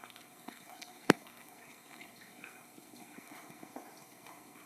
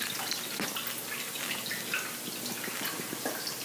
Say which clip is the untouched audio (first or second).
second